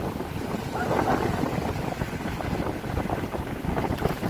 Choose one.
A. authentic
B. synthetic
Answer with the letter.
A